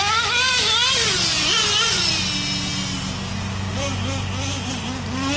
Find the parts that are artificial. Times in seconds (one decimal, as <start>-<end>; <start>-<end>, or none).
1.3-2.1